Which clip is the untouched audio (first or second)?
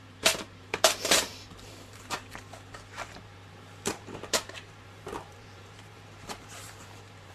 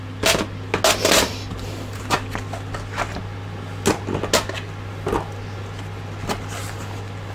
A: second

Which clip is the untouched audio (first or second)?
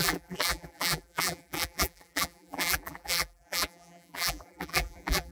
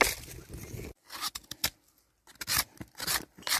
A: second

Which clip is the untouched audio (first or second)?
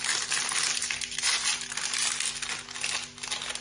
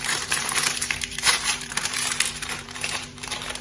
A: first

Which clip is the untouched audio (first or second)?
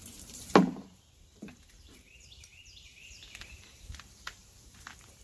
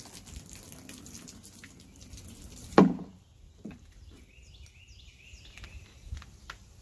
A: second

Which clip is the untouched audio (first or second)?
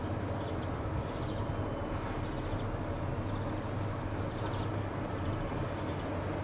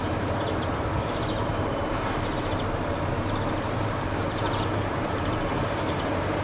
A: first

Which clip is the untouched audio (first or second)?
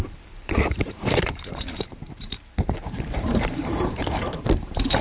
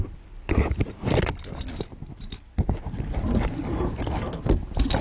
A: second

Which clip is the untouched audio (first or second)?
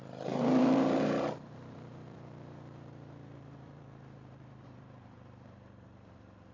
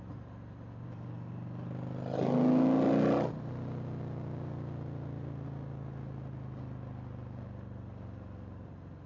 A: second